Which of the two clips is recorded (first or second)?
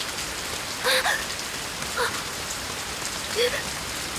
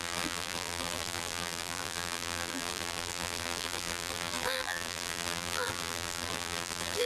first